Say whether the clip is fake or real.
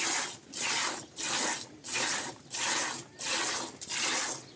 real